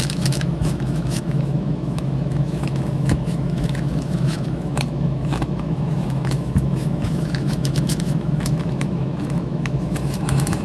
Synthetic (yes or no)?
yes